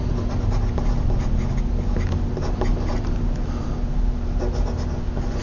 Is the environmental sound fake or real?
real